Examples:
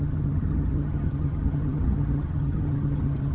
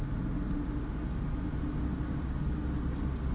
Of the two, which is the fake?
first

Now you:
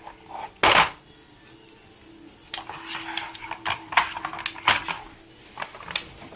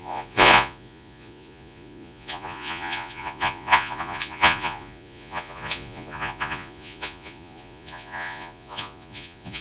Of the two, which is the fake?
second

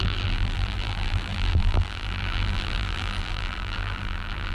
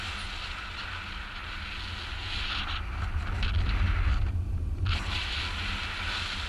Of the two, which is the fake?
first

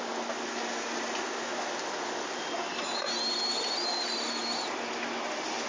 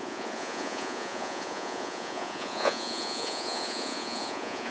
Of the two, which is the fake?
second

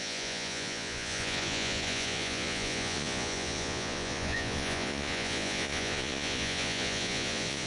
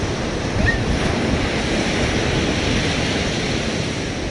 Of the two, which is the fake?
first